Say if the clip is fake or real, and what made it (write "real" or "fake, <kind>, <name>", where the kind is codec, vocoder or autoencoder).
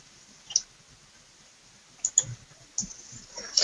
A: real